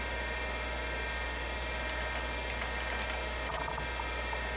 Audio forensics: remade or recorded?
recorded